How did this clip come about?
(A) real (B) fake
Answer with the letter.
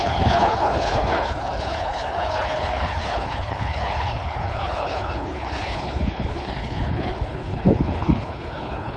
B